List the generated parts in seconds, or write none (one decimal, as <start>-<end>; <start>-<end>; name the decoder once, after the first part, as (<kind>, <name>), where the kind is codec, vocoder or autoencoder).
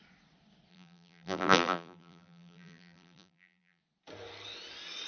0.7-3.8 (vocoder, BigVGAN v2)